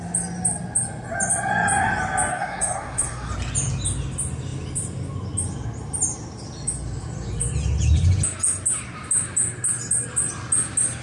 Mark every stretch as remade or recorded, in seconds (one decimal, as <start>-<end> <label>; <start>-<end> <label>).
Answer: 0.0-2.3 recorded; 2.3-3.3 remade; 3.3-11.0 recorded